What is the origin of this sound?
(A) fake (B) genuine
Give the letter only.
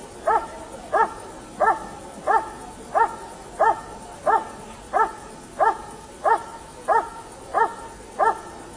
B